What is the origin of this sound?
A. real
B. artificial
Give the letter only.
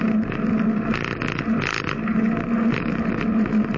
A